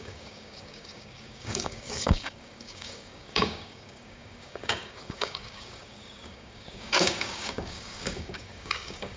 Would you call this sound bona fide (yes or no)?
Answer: no